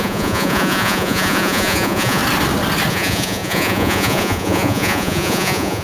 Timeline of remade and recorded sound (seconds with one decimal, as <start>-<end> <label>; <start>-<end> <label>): 0.0-2.2 remade; 2.2-2.9 recorded; 2.9-5.8 remade